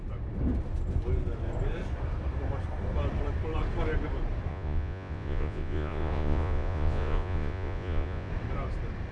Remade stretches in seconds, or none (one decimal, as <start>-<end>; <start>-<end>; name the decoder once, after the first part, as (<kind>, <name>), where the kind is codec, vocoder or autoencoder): 4.5-8.3 (vocoder, Vocos)